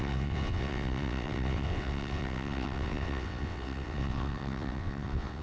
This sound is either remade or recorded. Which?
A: remade